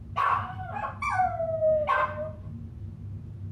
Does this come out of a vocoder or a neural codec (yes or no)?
yes